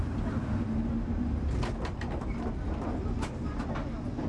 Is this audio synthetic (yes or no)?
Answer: no